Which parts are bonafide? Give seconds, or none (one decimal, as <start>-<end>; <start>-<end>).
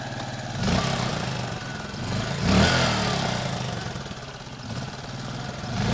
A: 0.0-5.9